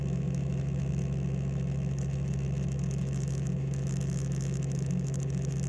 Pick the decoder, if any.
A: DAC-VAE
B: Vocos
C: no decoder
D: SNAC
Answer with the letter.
A